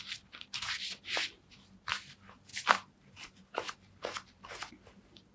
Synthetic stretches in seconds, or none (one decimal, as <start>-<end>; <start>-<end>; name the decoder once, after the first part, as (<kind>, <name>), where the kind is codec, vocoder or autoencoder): 2.5-4.7 (vocoder, BigVGAN v2)